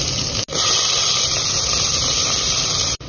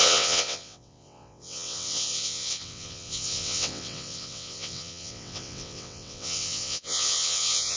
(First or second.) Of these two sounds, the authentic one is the first